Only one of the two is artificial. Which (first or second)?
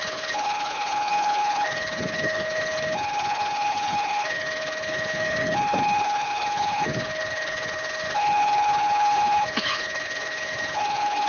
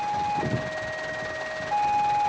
first